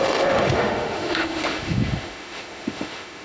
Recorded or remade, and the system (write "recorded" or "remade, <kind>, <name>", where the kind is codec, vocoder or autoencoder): remade, autoencoder, DAC-VAE